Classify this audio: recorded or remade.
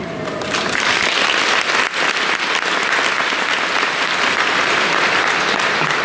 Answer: recorded